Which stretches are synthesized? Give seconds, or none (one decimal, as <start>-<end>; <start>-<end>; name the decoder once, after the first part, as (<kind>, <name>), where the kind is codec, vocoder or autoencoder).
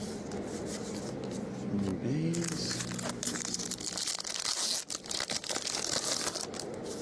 none